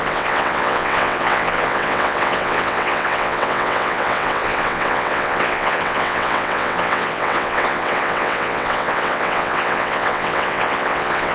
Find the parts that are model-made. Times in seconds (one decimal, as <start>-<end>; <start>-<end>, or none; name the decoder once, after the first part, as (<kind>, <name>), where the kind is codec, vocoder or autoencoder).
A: 0.0-11.3 (vocoder, WaveNeXt)